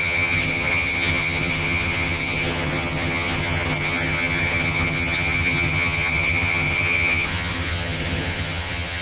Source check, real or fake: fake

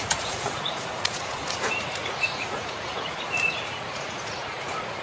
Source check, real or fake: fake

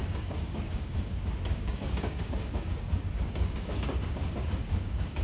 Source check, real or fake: fake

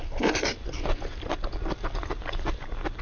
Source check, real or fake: real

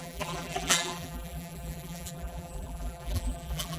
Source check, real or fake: fake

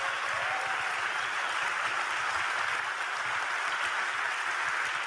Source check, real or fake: real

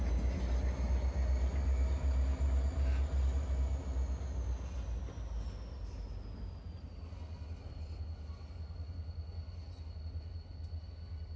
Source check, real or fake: real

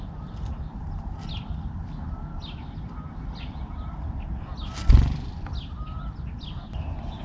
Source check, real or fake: real